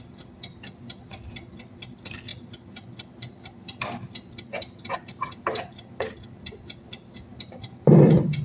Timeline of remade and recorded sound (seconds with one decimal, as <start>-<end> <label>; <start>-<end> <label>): 0.0-2.3 recorded; 2.3-6.1 remade; 6.1-7.3 recorded; 7.3-8.4 remade